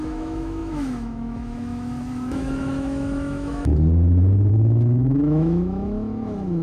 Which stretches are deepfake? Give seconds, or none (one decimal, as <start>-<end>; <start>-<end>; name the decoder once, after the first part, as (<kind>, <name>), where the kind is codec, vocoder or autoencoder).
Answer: 0.0-3.7 (autoencoder, DAC-VAE); 4.5-6.6